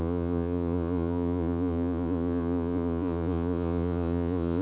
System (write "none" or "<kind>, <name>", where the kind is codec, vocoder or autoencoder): vocoder, Vocos